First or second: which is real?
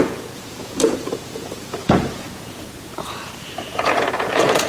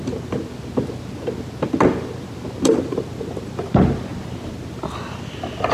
second